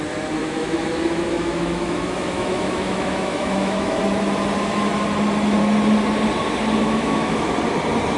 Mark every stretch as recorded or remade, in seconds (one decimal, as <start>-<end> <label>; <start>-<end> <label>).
0.0-0.4 recorded; 0.4-4.0 remade; 4.0-6.8 recorded; 6.8-7.5 remade; 7.5-8.2 recorded